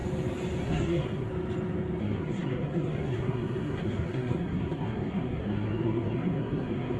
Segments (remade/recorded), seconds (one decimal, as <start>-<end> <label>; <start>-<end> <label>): 0.0-0.6 recorded; 0.6-1.3 remade; 1.3-2.0 recorded; 2.0-7.0 remade